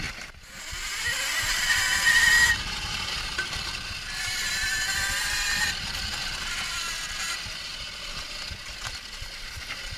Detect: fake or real real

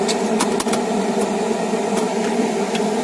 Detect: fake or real real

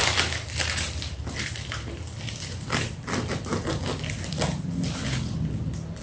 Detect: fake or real fake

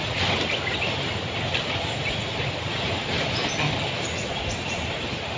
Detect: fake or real real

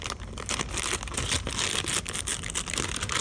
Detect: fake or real real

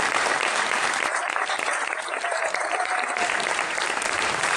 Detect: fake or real fake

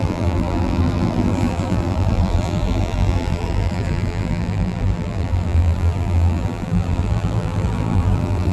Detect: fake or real fake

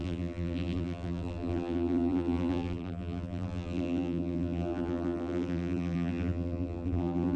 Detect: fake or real fake